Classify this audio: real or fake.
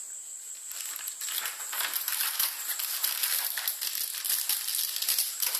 real